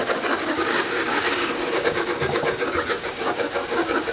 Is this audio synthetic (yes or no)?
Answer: yes